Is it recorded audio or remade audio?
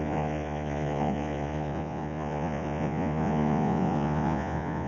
remade